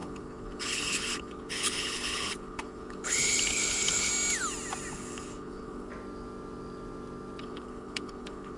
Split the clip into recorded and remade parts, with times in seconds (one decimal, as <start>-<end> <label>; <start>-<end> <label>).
0.0-4.1 remade; 4.1-4.9 recorded; 4.9-5.9 remade; 5.9-7.4 recorded; 7.4-8.6 remade